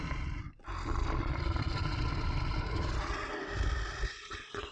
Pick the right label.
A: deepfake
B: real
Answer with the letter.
B